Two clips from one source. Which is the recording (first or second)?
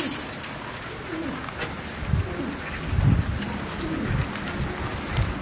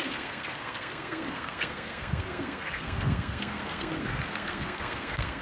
first